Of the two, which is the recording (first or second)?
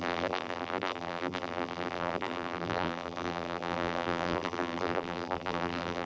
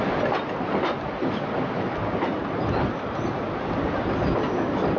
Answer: second